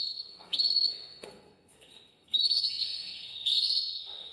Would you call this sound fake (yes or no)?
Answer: yes